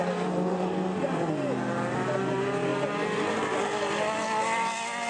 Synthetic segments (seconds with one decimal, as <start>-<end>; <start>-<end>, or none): none